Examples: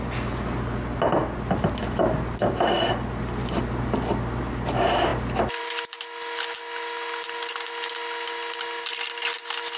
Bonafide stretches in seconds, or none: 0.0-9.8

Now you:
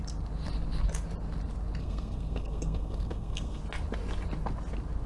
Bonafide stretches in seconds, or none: 0.0-1.8; 3.6-5.1

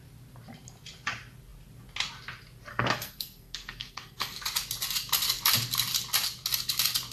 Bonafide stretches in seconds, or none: 0.0-2.7; 4.4-7.1

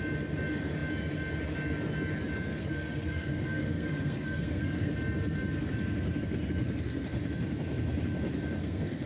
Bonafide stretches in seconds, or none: 0.0-2.6; 4.9-8.6

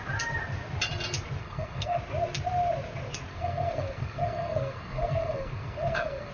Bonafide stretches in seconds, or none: 0.0-1.4; 2.0-3.3

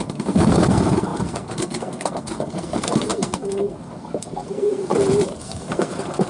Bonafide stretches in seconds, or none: 4.9-5.4

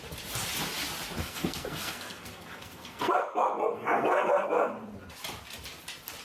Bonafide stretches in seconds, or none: 0.0-1.2; 4.7-6.2